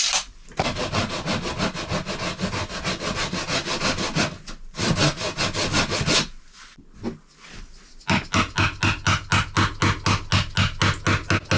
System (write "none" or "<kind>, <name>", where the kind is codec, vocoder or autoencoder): none